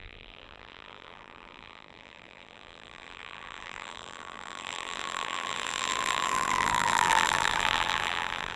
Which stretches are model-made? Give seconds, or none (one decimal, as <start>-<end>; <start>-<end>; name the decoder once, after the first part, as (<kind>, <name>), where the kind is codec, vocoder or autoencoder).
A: 0.0-8.6 (vocoder, BigVGAN v2)